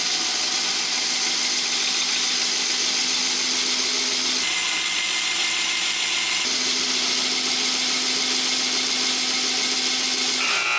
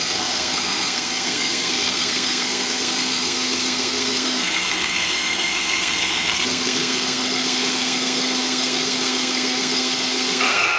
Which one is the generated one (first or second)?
second